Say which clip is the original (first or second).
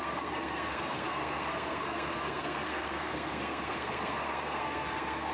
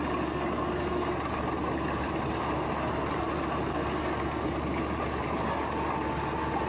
second